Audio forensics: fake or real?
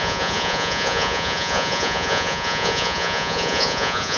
fake